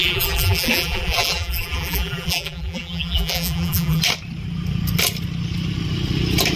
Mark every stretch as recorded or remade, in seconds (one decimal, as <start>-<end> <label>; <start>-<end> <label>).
0.0-4.0 remade; 4.0-6.6 recorded